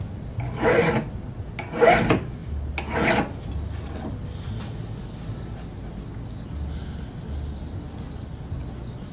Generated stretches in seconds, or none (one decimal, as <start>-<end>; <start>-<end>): none